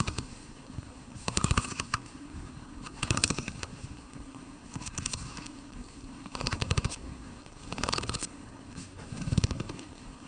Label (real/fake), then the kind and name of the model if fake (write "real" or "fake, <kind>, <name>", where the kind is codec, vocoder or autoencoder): fake, codec, SNAC